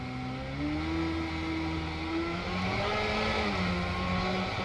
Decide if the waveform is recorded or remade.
recorded